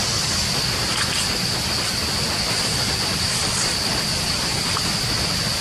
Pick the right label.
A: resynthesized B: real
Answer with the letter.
B